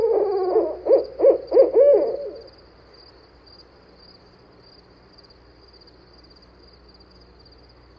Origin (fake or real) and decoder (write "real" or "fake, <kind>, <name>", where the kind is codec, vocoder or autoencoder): real